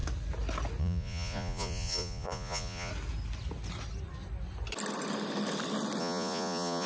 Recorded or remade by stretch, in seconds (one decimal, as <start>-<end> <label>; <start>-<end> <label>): 0.0-0.8 recorded; 0.8-2.9 remade; 2.9-6.0 recorded; 6.0-6.9 remade